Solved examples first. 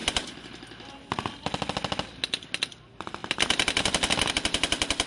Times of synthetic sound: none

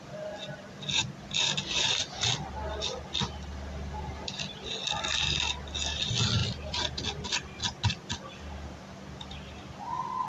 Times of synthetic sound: none

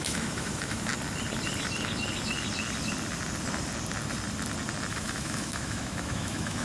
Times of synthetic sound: 0.0-0.9 (autoencoder, DAC-VAE); 4.9-6.6

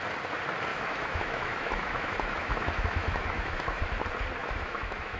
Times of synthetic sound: 0.7-3.8 (autoencoder, DAC-VAE); 4.4-5.2

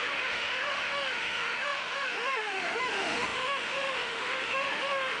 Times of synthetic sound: 0.0-5.2 (autoencoder, DAC-VAE)

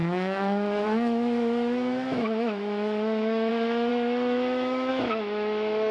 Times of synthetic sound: 0.0-5.9 (autoencoder, DAC-VAE)

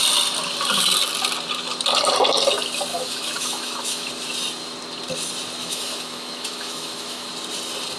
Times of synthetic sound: 2.9-4.1 (autoencoder, DAC-VAE); 5.6-7.3

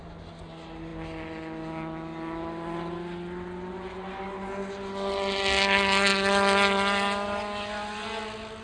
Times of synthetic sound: none